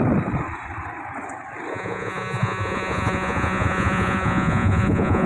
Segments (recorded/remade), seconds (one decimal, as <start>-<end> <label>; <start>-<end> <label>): 0.0-1.7 recorded; 1.7-5.3 remade